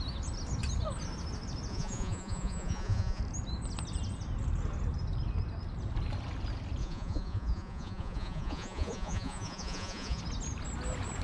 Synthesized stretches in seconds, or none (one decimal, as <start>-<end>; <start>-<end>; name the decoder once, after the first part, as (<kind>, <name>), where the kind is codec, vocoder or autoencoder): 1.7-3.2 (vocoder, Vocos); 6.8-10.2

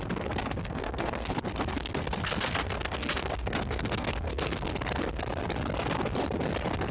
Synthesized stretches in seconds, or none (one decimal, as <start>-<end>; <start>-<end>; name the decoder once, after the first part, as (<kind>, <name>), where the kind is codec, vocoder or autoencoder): 0.6-4.7 (codec, SNAC)

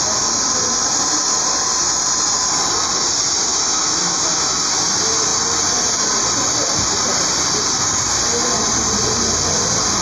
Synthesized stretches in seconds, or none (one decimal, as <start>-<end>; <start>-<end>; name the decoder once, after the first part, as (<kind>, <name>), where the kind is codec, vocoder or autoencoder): 3.5-4.6 (autoencoder, DAC-VAE)

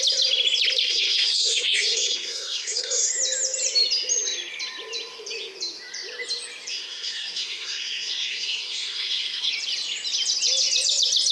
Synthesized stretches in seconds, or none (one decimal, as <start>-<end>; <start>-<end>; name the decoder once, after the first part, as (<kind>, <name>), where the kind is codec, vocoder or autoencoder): 0.8-3.1 (codec, SNAC); 6.7-9.5

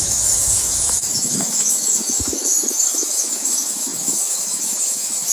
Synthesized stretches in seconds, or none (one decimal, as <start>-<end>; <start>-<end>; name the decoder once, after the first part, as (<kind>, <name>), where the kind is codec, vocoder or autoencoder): 0.0-5.3 (autoencoder, DAC-VAE)